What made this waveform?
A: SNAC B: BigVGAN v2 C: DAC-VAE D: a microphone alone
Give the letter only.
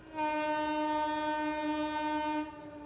D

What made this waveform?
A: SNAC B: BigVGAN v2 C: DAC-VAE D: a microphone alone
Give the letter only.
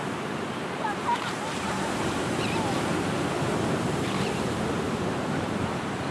B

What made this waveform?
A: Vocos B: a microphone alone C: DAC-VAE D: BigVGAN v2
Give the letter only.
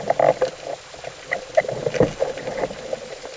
B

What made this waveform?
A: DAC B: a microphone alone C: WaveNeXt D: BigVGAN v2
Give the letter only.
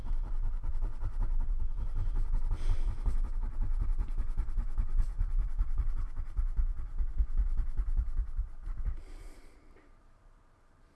D